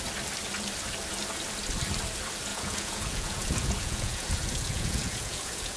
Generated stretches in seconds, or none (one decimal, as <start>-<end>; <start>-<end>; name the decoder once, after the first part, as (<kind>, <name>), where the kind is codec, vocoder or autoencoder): 2.5-5.8 (vocoder, Vocos)